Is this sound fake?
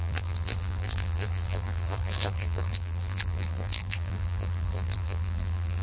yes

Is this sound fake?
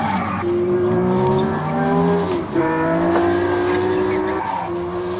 no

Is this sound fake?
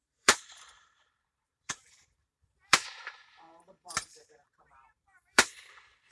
yes